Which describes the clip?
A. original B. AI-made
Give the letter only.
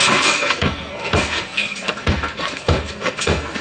B